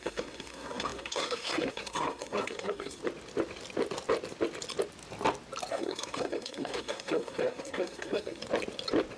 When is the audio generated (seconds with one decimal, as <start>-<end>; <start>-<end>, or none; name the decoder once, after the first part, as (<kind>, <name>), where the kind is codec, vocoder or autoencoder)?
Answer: 0.0-3.0 (codec, SNAC); 5.7-8.4